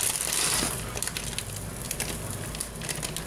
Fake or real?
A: real